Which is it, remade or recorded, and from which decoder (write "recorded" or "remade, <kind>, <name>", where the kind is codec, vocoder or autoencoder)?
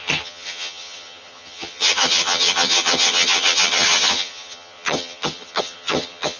remade, vocoder, HiFi-GAN